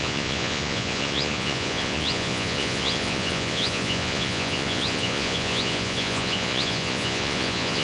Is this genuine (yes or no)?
no